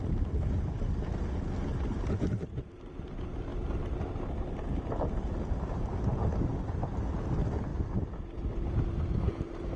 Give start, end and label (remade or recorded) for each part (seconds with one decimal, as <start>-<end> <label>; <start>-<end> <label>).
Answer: 0.0-9.8 recorded